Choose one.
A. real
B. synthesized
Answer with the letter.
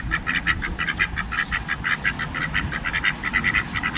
A